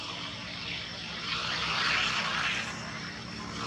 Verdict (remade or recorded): recorded